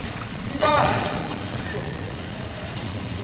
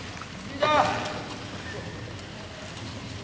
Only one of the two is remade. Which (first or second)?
first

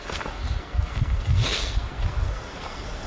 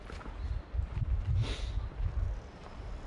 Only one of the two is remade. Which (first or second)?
first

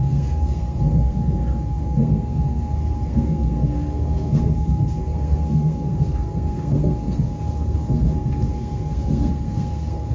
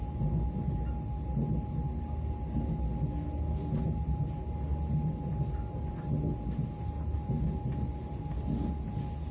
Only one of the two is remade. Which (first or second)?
first